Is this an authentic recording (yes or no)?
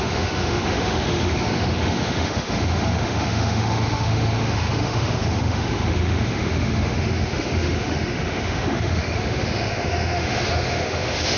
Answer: no